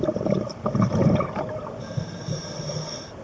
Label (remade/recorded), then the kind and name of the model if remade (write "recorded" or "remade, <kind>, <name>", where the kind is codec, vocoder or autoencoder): recorded